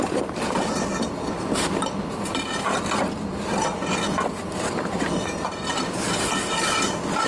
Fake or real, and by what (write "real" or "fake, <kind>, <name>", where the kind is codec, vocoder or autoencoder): fake, vocoder, BigVGAN v2